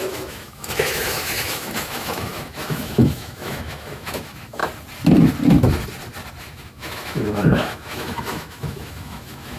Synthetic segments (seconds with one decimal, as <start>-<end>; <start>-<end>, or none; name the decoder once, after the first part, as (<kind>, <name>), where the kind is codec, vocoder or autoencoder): 0.0-4.6 (autoencoder, DAC-VAE); 6.4-9.6